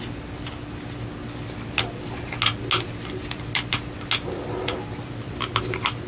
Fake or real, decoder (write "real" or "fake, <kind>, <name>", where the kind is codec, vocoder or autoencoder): real